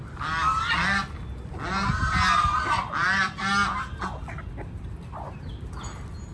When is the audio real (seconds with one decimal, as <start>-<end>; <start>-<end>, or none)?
0.0-6.3